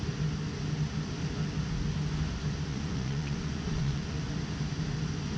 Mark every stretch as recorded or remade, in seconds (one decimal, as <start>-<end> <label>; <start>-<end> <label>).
0.0-2.7 recorded; 2.7-4.2 remade; 4.2-5.4 recorded